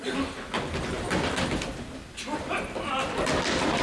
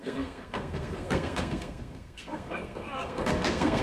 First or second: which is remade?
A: second